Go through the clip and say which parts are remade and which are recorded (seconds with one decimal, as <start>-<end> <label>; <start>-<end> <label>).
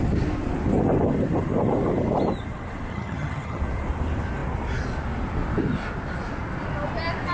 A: 0.0-2.9 recorded; 2.9-3.6 remade; 3.6-7.3 recorded